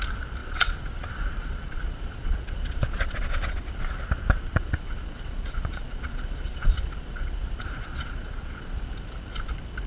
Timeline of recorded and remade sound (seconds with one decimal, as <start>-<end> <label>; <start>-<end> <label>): 0.0-0.4 recorded; 0.4-3.7 remade; 3.7-4.5 recorded; 4.5-8.9 remade; 8.9-9.9 recorded